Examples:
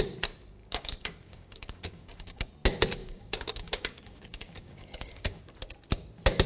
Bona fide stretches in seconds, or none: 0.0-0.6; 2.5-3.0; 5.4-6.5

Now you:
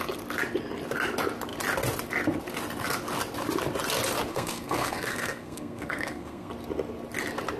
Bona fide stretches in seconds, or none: 0.0-4.3; 6.5-7.6

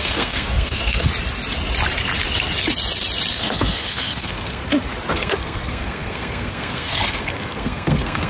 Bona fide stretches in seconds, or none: 1.1-3.3; 4.6-5.1

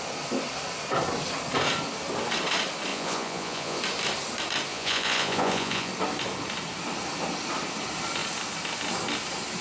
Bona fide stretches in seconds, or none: 0.0-2.9; 3.8-4.7; 5.9-9.6

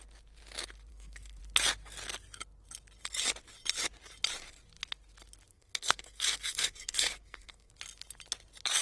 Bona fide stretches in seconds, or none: 0.0-0.9; 1.4-5.5; 7.7-8.8

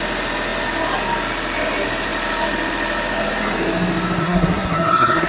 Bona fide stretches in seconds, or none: 0.0-4.2

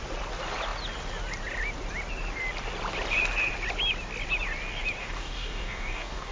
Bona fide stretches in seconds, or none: 0.0-5.0

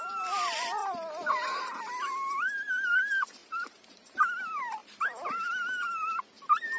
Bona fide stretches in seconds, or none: 0.0-0.8; 2.9-3.4; 4.1-4.8; 5.5-6.8